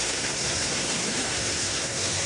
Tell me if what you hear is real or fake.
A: fake